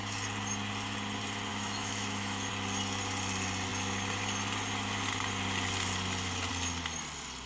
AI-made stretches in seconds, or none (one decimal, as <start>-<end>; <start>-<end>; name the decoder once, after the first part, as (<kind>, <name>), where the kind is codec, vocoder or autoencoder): 1.5-2.5 (autoencoder, DAC-VAE)